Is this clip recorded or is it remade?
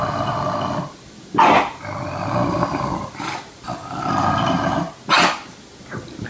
recorded